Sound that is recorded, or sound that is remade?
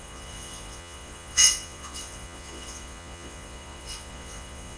remade